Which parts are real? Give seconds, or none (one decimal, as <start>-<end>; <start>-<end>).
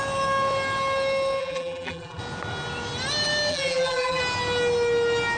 0.0-1.4; 2.2-3.5; 4.2-5.4